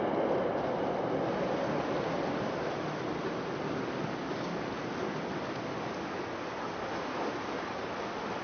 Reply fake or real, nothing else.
real